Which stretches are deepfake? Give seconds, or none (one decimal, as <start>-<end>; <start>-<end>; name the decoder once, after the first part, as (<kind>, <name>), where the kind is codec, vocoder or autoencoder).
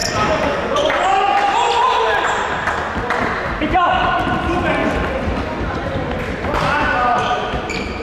none